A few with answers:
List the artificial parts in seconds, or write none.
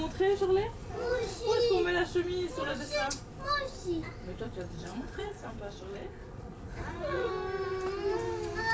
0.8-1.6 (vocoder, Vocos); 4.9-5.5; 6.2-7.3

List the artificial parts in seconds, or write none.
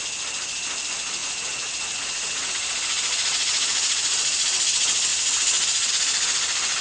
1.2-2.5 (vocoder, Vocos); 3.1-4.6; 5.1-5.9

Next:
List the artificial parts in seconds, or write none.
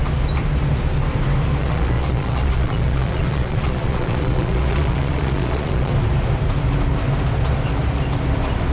1.6-5.9 (vocoder, Vocos)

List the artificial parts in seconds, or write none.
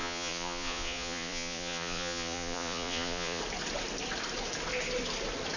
0.0-3.4 (vocoder, Vocos)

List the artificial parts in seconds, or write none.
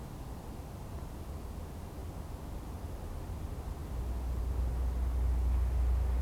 none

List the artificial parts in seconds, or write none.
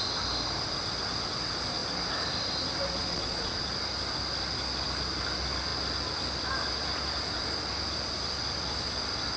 3.0-3.7 (vocoder, Vocos)